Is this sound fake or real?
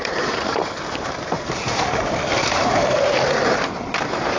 fake